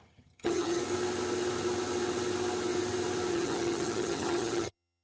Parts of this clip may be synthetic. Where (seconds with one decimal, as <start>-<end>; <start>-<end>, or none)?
0.0-0.8; 3.3-5.0